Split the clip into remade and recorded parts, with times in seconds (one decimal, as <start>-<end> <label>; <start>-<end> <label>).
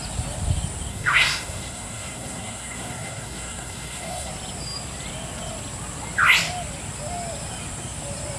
0.0-0.9 recorded; 0.9-4.3 remade; 4.3-8.4 recorded